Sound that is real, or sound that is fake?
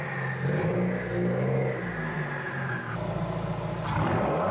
real